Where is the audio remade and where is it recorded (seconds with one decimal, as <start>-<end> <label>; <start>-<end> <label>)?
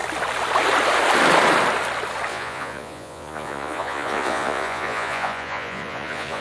0.0-2.3 recorded; 2.3-6.4 remade